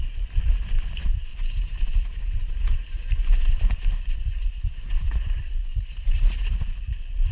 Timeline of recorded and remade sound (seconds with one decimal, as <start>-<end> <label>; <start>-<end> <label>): 0.0-1.3 recorded; 1.3-5.2 remade; 5.2-5.7 recorded; 5.7-6.4 remade; 6.4-7.3 recorded